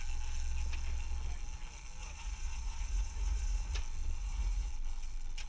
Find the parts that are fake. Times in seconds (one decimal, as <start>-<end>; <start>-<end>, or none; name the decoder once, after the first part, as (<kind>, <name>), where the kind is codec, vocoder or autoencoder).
2.0-3.8 (vocoder, Vocos); 4.2-4.7